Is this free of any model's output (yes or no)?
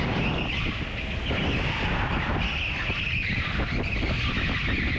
yes